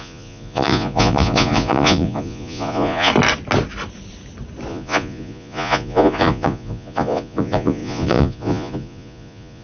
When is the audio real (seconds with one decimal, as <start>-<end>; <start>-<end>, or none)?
3.1-4.7